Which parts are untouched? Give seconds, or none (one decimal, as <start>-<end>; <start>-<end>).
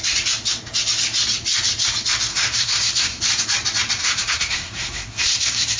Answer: 0.0-2.3; 3.2-4.0